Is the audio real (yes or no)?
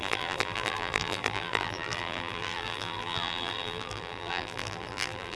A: no